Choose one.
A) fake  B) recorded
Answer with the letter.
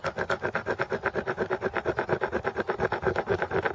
B